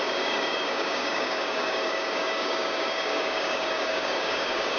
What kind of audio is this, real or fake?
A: fake